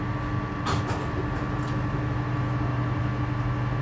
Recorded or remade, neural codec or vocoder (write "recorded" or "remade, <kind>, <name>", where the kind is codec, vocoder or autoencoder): recorded